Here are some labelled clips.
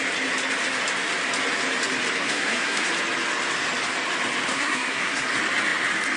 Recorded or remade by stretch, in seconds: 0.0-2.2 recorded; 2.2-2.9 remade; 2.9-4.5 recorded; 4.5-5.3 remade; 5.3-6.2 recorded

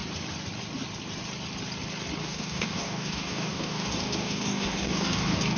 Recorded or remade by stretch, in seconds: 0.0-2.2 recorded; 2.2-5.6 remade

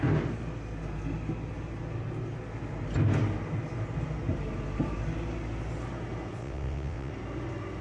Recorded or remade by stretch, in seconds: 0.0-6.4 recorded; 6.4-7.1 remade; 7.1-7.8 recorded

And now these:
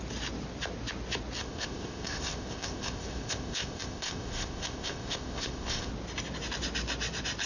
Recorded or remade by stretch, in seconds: 0.0-1.4 recorded; 1.4-5.9 remade; 5.9-7.5 recorded

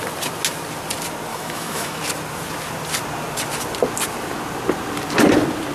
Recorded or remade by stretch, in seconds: 0.0-1.3 recorded; 1.3-2.0 remade; 2.0-5.7 recorded

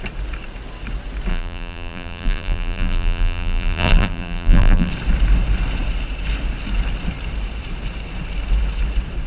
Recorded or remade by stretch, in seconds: 0.0-1.3 recorded; 1.3-4.9 remade; 4.9-9.3 recorded

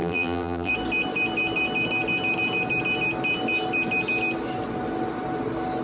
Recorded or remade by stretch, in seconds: 0.0-0.7 remade; 0.7-5.8 recorded

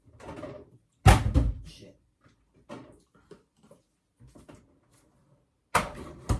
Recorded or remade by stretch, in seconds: 0.0-6.4 recorded